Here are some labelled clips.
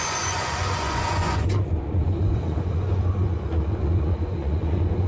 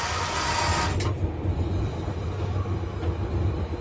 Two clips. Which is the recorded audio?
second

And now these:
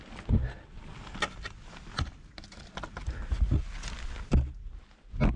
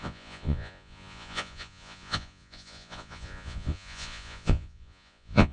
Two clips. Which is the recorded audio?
first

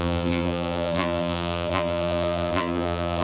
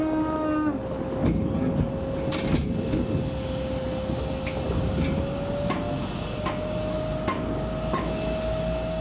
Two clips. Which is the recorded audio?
second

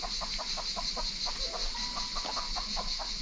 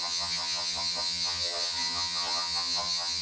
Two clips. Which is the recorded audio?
first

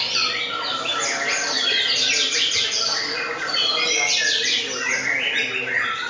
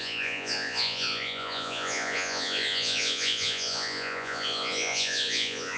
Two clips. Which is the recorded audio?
first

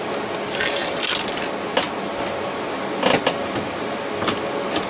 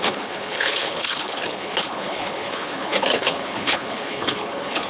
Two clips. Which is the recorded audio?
first